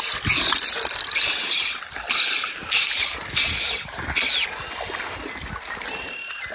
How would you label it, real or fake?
real